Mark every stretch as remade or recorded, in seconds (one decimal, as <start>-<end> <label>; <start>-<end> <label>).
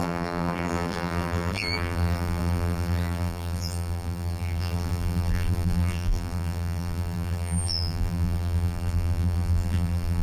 0.0-10.2 remade